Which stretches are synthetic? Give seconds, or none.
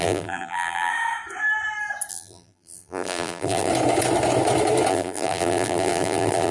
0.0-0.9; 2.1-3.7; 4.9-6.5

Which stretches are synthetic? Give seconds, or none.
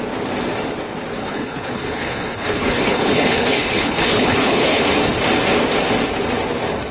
1.2-4.8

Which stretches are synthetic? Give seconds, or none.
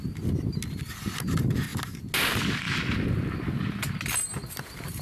none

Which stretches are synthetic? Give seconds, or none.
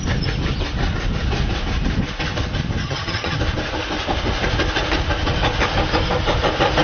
2.8-3.4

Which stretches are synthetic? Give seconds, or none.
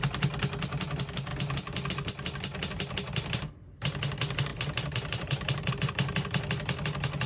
4.5-5.7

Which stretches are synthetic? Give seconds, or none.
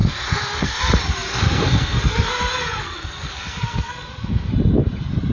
0.0-0.8; 1.3-4.5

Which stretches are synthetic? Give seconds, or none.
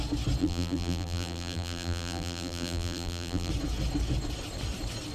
0.4-3.5